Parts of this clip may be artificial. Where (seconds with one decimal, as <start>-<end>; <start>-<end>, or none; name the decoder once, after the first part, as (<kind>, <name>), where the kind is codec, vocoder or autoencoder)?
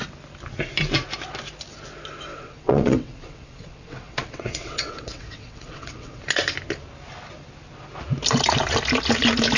2.3-6.2 (vocoder, WaveNeXt)